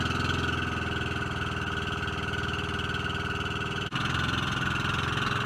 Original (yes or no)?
yes